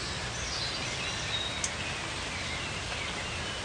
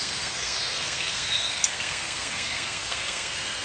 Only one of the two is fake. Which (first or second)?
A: second